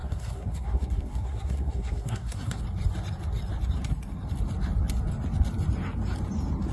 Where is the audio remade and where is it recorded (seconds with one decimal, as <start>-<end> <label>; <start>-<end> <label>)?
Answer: 0.0-2.6 remade; 2.6-6.7 recorded